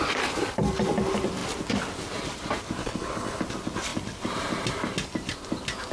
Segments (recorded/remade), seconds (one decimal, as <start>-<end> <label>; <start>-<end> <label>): 0.0-2.8 recorded; 2.8-3.4 remade; 3.4-5.9 recorded